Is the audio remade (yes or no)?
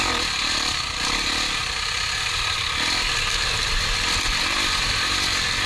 no